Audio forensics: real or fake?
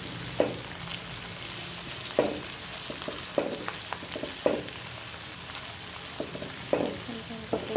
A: real